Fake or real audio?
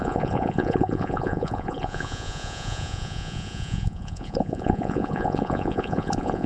fake